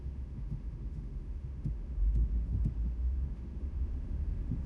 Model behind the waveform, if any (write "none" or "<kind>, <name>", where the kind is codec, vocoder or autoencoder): autoencoder, DAC-VAE